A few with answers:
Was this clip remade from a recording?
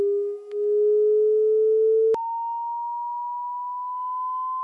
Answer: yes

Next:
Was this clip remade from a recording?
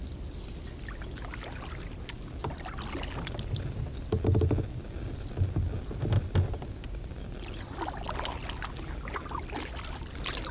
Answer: no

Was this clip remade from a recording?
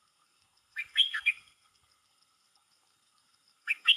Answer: yes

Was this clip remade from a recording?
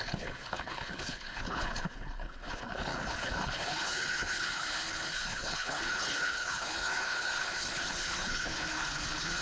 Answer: yes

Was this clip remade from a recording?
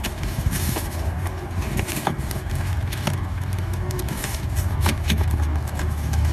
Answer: yes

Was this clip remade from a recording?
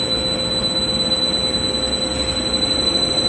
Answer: no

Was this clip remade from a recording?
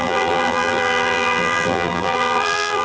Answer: yes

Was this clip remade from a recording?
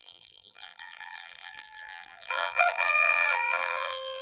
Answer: yes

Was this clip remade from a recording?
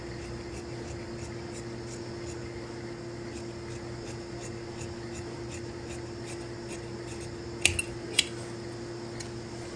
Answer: no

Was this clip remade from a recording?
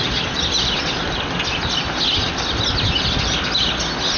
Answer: no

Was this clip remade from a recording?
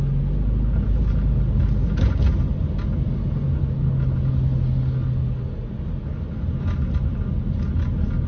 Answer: no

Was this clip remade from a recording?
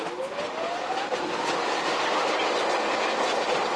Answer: no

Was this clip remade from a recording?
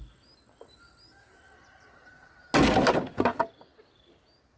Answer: no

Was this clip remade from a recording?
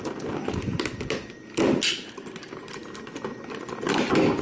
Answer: no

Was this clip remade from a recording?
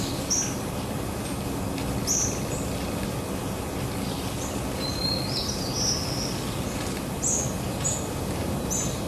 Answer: no